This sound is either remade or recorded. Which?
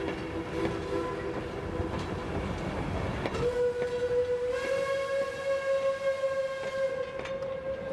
recorded